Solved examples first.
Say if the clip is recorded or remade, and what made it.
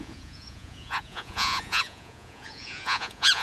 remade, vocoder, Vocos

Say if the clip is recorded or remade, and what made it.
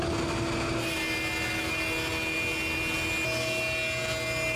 recorded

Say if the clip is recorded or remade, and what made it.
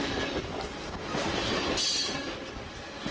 recorded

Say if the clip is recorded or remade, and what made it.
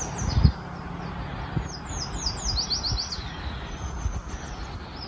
recorded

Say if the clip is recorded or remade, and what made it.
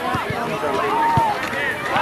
recorded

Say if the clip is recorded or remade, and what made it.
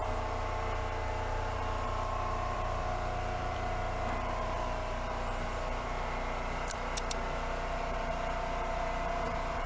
remade, vocoder, BigVGAN v2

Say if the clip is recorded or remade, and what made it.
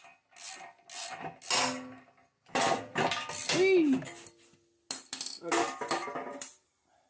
recorded